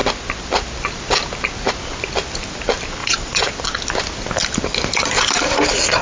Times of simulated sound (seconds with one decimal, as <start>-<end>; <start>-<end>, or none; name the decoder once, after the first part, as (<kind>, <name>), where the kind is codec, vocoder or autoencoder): 3.0-3.5 (vocoder, Vocos)